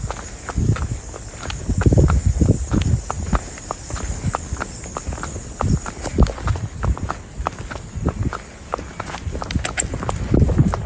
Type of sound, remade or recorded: recorded